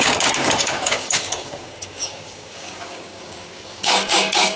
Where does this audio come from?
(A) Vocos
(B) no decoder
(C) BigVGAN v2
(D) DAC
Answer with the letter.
D